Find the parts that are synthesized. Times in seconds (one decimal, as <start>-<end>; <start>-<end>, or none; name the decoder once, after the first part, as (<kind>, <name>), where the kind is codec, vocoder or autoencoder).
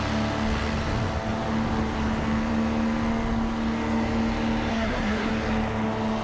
4.7-5.3 (codec, SNAC)